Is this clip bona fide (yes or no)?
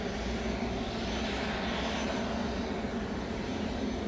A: yes